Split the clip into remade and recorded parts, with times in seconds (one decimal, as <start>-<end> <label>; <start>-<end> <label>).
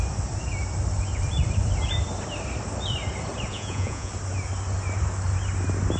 0.0-3.5 recorded; 3.5-4.1 remade; 4.1-6.0 recorded